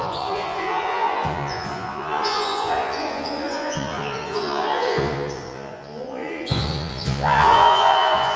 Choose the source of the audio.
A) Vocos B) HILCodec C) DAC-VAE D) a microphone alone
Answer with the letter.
A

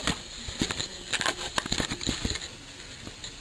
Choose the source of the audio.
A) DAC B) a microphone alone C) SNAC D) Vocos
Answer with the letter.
B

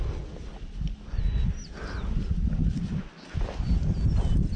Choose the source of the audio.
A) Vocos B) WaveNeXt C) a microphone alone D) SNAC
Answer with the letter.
C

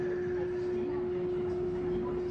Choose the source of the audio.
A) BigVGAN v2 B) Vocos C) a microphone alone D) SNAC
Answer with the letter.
C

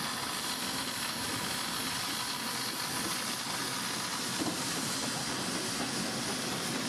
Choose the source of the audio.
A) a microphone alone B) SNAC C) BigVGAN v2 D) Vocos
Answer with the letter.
A